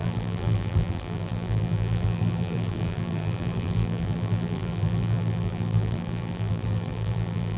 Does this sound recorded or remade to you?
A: remade